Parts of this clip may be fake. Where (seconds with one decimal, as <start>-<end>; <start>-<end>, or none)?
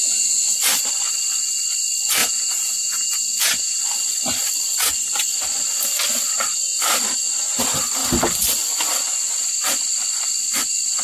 2.2-3.8